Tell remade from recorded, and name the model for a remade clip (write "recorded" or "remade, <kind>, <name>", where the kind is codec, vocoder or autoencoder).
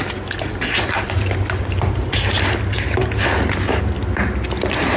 recorded